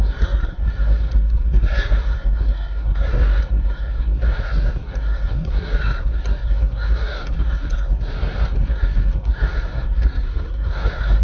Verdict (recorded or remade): remade